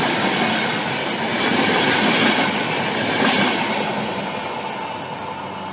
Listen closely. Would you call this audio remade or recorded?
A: recorded